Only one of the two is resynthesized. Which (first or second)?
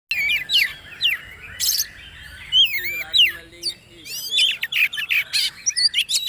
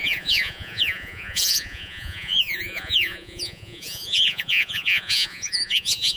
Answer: second